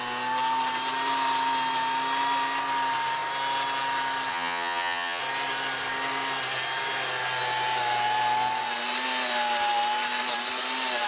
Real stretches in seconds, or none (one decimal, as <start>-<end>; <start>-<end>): 0.0-4.3; 5.2-11.1